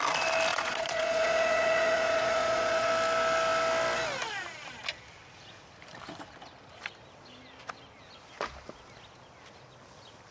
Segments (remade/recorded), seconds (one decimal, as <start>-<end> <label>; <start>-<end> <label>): 0.0-0.5 recorded; 0.5-2.9 remade; 2.9-10.3 recorded